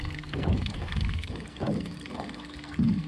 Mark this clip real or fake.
fake